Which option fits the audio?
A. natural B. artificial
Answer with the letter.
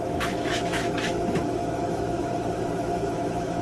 B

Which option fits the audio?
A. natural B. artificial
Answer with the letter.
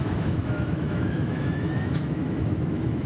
B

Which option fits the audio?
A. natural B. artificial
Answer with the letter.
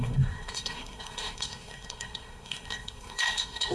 B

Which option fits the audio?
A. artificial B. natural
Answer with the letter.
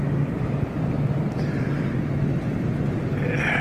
B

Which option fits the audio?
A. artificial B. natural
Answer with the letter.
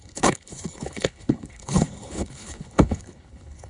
A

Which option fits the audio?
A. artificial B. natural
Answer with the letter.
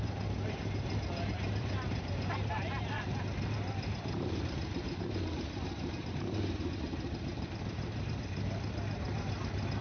A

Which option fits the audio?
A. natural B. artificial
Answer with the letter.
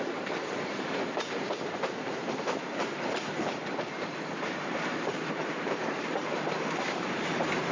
B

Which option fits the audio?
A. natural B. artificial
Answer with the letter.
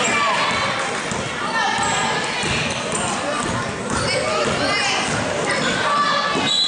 A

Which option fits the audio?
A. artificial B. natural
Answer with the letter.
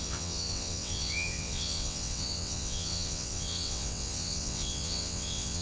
A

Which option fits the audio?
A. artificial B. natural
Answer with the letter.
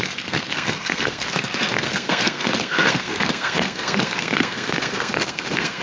A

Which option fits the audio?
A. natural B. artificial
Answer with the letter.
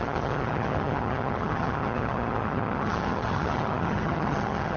B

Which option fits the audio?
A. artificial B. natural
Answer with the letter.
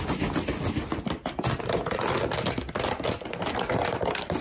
B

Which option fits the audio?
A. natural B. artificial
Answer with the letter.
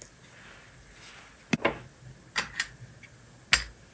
A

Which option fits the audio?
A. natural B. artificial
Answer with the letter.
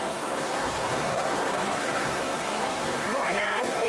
B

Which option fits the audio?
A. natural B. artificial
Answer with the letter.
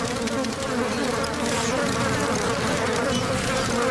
A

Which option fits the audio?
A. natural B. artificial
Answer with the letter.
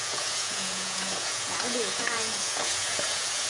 B